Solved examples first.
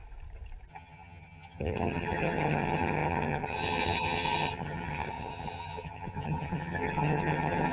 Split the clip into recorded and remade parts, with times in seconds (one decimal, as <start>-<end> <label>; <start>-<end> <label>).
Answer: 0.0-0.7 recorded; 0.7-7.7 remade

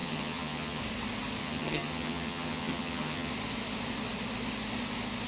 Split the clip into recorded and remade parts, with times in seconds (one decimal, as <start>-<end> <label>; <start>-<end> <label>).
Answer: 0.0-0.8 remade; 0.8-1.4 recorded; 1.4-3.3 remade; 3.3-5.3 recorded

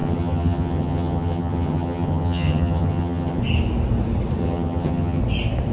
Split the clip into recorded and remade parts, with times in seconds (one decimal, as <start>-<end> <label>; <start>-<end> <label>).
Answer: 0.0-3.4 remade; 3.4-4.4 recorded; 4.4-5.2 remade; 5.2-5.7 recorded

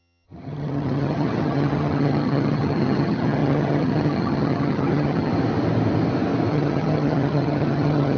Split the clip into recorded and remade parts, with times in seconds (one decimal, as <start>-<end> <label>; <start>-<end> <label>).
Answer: 0.0-5.3 remade; 5.3-6.5 recorded; 6.5-8.2 remade